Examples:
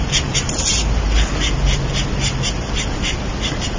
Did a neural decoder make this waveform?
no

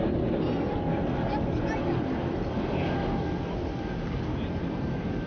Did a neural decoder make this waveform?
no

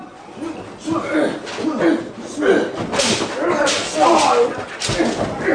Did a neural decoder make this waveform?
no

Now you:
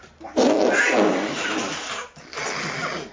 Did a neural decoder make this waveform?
no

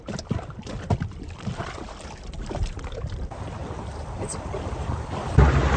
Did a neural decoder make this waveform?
yes